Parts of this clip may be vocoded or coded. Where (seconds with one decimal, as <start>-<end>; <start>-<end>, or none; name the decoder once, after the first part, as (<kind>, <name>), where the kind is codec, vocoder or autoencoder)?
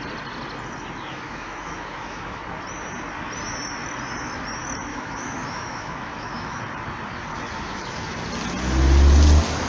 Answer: 1.1-2.4 (autoencoder, DAC-VAE); 4.9-6.6; 7.3-8.2